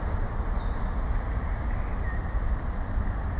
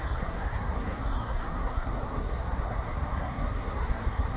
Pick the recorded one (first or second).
first